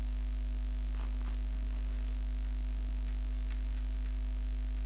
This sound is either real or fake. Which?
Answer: real